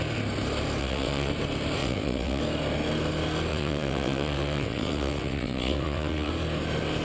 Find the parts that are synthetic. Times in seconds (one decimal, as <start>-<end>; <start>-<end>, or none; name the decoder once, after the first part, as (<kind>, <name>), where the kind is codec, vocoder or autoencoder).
0.8-1.3 (vocoder, WaveNeXt); 1.8-2.4; 3.5-6.3